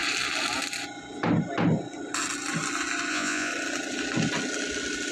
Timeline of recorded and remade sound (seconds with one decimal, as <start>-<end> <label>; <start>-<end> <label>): 0.0-3.1 recorded; 3.1-3.5 remade; 3.5-5.1 recorded